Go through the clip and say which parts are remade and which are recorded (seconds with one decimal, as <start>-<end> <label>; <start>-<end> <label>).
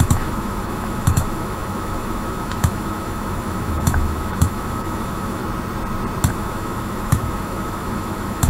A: 0.0-5.4 remade; 5.4-6.3 recorded; 6.3-8.5 remade